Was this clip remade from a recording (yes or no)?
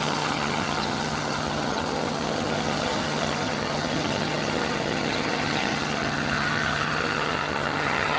yes